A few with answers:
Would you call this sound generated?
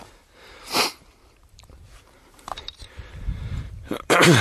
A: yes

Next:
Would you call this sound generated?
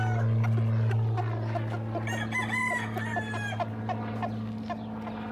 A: no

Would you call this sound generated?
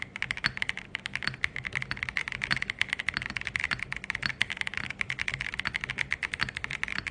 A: no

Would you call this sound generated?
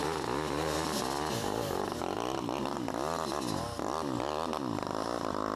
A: no